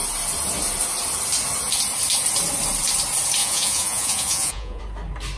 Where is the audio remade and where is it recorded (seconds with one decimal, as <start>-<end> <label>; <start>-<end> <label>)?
0.0-3.4 recorded; 3.4-4.8 remade; 4.8-5.4 recorded